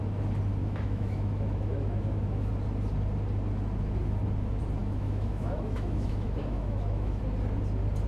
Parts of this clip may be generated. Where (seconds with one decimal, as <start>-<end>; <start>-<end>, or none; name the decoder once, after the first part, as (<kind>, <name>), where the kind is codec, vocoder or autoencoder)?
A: 0.6-2.5 (autoencoder, DAC-VAE); 4.8-7.2